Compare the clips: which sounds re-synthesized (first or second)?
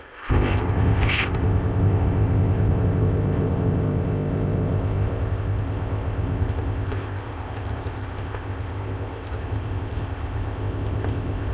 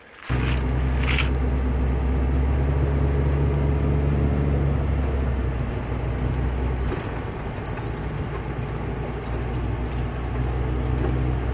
first